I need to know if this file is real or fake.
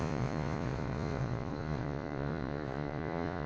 fake